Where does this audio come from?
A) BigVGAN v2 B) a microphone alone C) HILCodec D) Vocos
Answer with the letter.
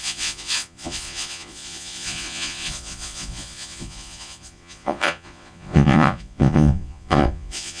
D